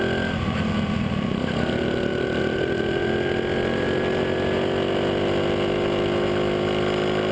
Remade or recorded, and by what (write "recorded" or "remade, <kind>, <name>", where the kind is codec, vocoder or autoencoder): recorded